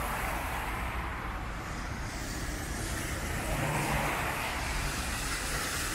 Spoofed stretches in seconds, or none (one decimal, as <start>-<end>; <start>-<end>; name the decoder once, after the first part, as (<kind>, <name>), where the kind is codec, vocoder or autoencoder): 0.0-5.9 (vocoder, BigVGAN v2)